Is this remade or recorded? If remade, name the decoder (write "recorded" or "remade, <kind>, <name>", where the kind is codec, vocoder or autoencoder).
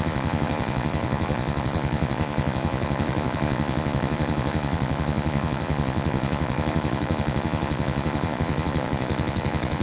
remade, vocoder, Vocos